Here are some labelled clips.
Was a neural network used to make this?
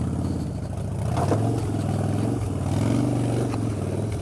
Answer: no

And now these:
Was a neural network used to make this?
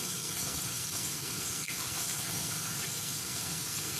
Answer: yes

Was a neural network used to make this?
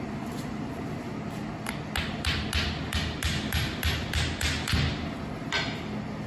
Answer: no